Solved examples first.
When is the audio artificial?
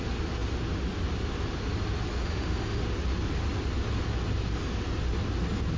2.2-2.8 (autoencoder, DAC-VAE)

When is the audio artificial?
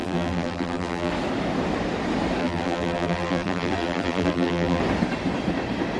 0.0-1.1 (vocoder, BigVGAN v2); 2.4-4.8